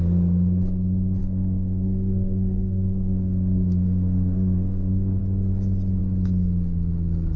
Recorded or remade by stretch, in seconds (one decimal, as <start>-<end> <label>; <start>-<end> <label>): 0.0-1.2 recorded; 1.2-5.2 remade; 5.2-7.4 recorded